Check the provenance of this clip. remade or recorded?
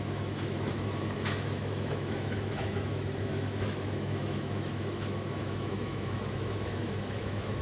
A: remade